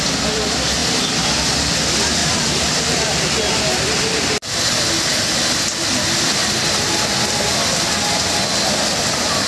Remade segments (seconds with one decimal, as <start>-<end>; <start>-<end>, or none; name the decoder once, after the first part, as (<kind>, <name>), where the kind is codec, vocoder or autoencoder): 2.2-3.5 (vocoder, BigVGAN v2)